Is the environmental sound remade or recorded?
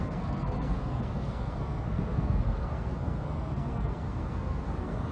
remade